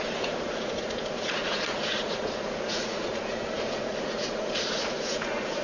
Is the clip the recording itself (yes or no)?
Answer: no